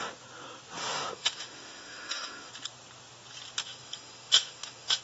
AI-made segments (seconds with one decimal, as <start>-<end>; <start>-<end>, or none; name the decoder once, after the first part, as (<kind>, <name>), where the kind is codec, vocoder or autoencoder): 0.8-2.5 (autoencoder, DAC-VAE); 3.6-5.0